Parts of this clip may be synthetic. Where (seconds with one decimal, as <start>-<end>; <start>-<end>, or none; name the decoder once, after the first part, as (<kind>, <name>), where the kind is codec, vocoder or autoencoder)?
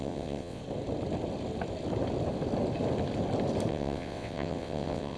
0.0-0.6 (vocoder, WaveNeXt); 3.7-5.2